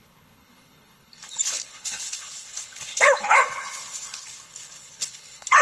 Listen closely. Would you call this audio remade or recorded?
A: remade